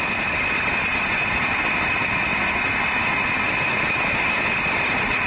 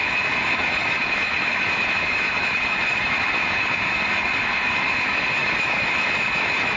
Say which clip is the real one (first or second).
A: first